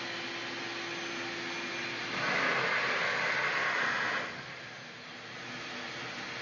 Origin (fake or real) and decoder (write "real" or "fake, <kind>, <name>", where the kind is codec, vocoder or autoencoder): real